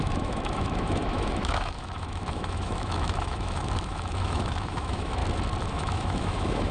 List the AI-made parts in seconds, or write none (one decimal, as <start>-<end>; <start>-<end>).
0.0-5.2; 5.7-6.7